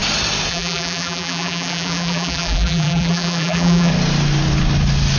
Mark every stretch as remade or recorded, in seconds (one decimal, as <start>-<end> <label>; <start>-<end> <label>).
0.0-0.5 recorded; 0.5-3.9 remade; 3.9-5.2 recorded